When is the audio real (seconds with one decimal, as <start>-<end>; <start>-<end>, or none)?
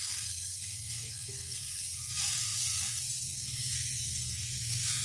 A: none